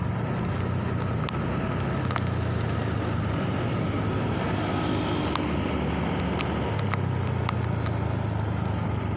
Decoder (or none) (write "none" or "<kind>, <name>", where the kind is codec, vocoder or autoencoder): none